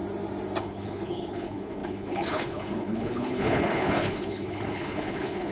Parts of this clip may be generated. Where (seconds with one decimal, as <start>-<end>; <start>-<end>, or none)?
0.6-5.5